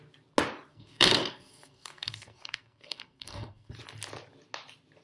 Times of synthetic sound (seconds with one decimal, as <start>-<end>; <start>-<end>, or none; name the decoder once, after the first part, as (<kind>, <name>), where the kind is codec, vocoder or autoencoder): 0.7-3.7 (codec, SNAC)